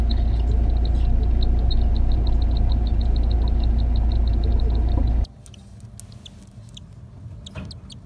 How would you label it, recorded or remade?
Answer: recorded